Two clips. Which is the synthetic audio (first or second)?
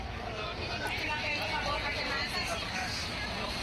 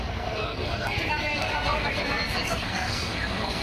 second